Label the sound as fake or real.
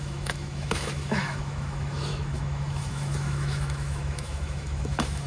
fake